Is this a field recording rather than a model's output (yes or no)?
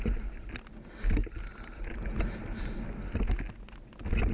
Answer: yes